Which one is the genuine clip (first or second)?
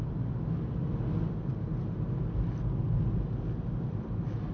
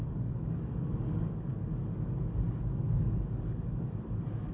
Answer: first